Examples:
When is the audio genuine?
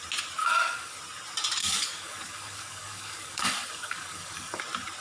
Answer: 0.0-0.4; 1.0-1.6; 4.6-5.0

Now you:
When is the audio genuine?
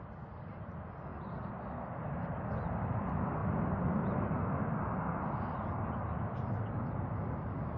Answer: 0.0-7.8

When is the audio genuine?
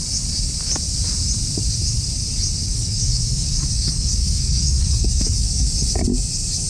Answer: 0.0-2.6; 5.7-6.7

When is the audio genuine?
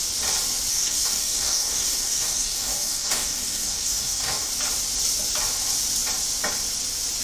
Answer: 0.0-0.7; 4.5-7.2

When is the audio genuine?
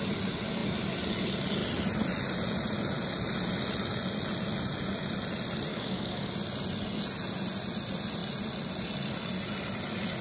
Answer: 0.0-5.7; 6.3-10.2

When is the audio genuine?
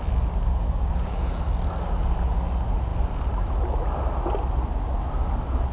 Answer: 0.0-0.5; 1.2-5.7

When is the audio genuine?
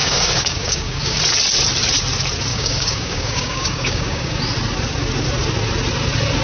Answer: 1.2-2.5; 4.4-6.4